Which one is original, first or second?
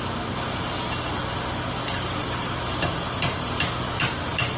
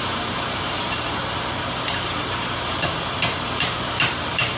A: first